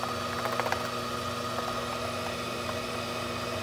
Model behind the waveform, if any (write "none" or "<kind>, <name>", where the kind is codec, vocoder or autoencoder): none